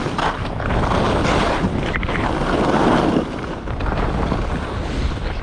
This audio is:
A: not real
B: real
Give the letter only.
B